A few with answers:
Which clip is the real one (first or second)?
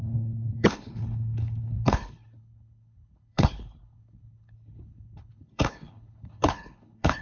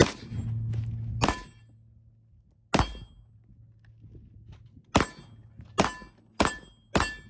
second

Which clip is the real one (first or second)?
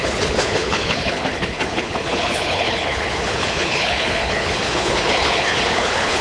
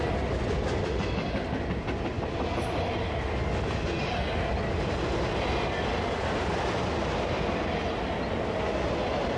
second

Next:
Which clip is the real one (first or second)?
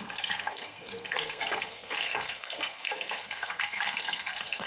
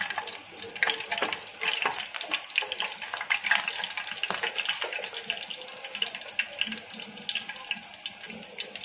second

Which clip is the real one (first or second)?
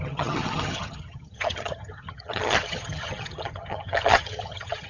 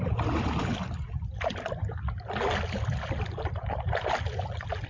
second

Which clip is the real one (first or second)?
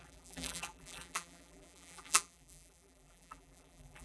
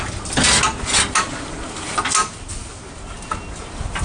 second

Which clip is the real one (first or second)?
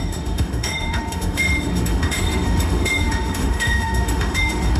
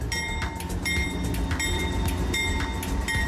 second